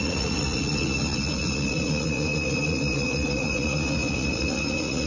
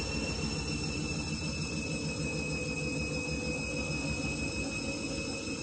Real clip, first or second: second